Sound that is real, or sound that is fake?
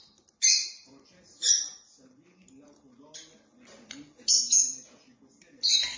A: real